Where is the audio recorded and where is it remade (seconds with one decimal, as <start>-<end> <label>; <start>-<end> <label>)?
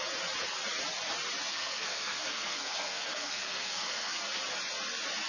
0.0-1.5 recorded; 1.5-4.2 remade; 4.2-5.3 recorded